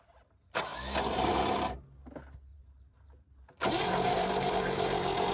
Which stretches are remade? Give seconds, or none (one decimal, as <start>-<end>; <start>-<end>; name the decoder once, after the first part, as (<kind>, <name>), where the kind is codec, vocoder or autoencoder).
2.5-5.3 (vocoder, BigVGAN v2)